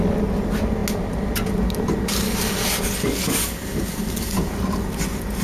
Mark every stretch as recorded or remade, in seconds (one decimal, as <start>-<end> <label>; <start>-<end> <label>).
0.0-3.2 recorded; 3.2-4.5 remade; 4.5-5.4 recorded